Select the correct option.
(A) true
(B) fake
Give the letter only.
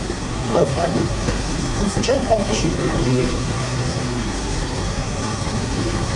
B